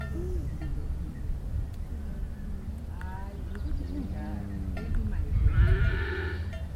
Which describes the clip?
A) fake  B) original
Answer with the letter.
B